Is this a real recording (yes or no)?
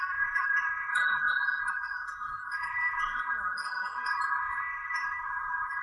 no